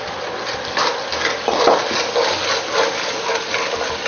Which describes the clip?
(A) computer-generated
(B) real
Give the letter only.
B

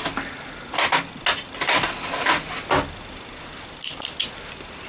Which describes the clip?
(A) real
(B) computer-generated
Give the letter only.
A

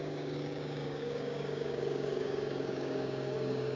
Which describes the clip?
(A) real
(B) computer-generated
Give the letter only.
B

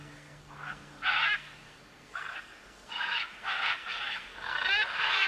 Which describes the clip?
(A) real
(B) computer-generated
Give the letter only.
B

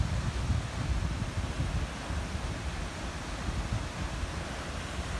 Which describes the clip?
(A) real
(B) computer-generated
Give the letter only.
A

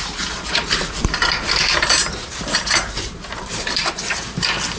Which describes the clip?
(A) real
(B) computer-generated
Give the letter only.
B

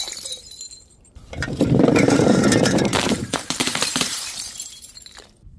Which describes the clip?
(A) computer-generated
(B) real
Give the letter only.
A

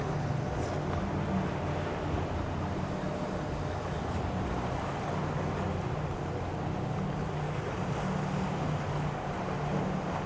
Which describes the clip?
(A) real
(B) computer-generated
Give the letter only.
A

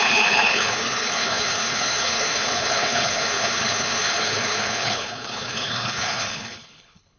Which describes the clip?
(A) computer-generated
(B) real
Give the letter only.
A